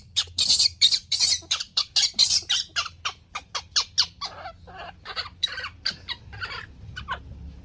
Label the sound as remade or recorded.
recorded